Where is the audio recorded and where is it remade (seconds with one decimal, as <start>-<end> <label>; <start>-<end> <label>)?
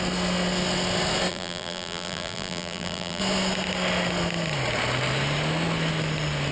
0.0-1.3 recorded; 1.3-3.2 remade; 3.2-6.5 recorded